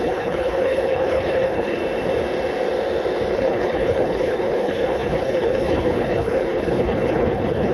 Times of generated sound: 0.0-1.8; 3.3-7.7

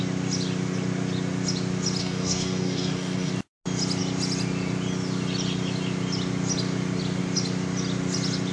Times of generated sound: 2.0-3.3